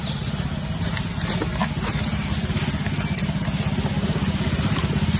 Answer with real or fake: real